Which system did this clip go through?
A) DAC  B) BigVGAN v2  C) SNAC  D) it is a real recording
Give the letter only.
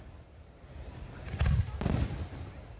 B